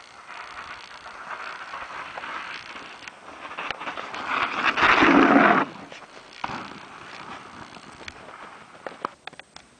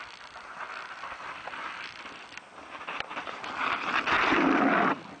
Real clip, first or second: first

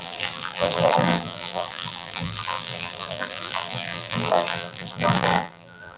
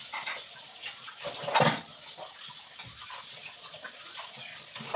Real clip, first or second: second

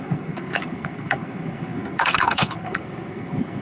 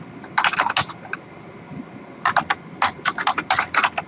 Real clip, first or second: second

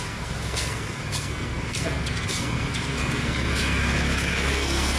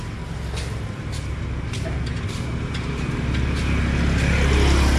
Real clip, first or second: second